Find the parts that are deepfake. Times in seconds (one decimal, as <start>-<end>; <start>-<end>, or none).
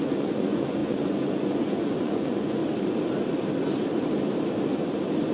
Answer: 0.0-2.6